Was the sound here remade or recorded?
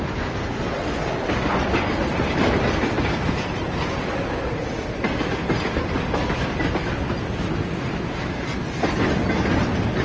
recorded